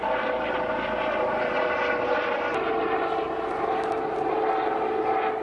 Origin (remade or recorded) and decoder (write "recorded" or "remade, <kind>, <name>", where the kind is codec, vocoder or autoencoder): recorded